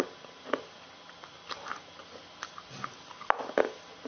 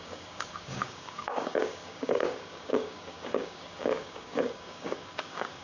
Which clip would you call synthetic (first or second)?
second